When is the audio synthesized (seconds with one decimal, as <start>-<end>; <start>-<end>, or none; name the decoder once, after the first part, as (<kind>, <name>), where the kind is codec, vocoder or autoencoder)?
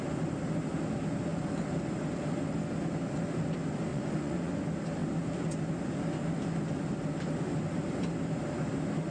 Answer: 3.9-4.5 (vocoder, Vocos)